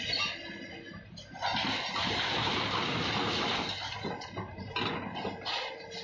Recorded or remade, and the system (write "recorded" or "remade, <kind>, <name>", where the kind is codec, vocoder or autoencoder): recorded